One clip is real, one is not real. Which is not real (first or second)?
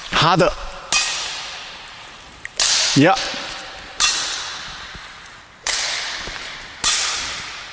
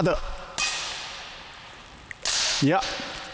first